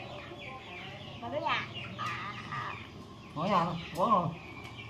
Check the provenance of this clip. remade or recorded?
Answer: recorded